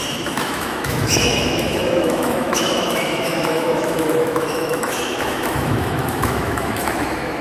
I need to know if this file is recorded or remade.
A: remade